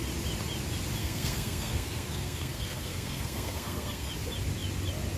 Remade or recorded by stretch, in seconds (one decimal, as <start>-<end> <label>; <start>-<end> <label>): 0.0-1.0 recorded; 1.0-4.1 remade; 4.1-5.2 recorded

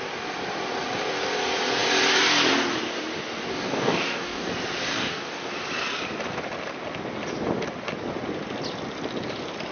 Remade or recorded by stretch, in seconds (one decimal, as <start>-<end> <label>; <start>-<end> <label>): 0.0-3.5 recorded; 3.5-4.5 remade; 4.5-4.9 recorded; 4.9-5.5 remade; 5.5-9.7 recorded

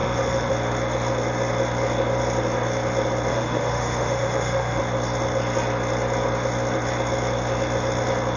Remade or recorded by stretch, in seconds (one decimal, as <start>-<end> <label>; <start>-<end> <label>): 0.0-0.5 remade; 0.5-3.3 recorded; 3.3-4.8 remade; 4.8-8.4 recorded

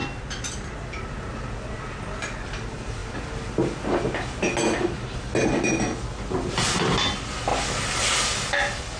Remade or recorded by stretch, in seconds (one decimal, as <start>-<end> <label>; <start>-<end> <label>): 0.0-0.7 remade; 0.7-9.0 recorded